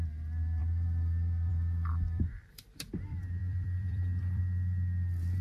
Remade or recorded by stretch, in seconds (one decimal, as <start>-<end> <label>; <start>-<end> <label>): 0.0-1.9 recorded; 1.9-2.9 remade; 2.9-3.4 recorded; 3.4-4.4 remade; 4.4-5.4 recorded